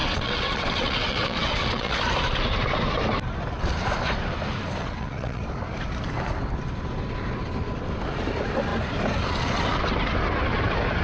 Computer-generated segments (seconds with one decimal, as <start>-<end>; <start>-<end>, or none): 0.0-2.0; 4.8-5.4